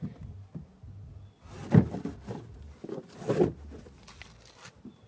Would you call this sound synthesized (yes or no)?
no